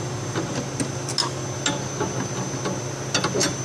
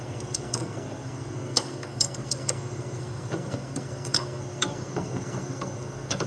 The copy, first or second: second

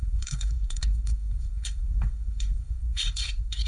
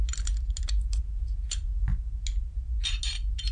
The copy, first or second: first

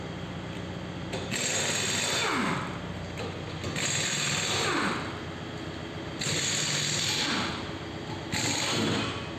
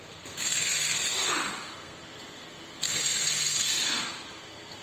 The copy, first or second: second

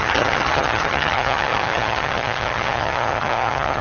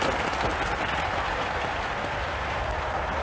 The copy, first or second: first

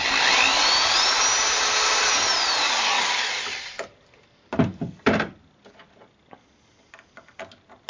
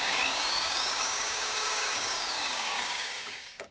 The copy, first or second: second